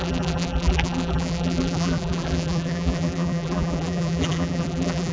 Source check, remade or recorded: remade